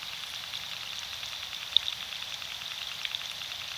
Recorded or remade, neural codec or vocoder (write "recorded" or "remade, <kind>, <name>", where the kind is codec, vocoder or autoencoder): recorded